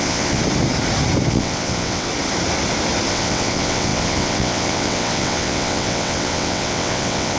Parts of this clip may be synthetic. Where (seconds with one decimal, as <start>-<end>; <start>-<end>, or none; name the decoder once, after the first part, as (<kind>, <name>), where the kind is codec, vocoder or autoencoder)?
0.0-0.4 (vocoder, WaveNeXt); 1.3-2.1; 3.1-7.4